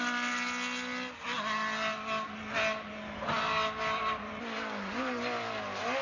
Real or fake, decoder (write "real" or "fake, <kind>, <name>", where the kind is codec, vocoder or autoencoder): real